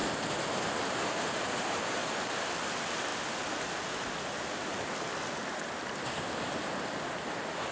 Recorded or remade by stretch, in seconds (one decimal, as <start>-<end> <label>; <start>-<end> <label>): 0.0-1.2 remade; 1.2-2.0 recorded; 2.0-2.6 remade; 2.6-7.7 recorded